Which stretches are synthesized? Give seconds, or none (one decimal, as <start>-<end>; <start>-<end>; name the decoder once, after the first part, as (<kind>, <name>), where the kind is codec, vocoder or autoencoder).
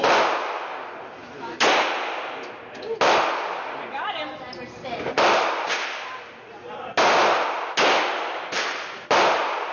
none